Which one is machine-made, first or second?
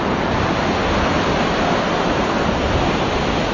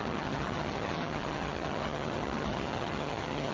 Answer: second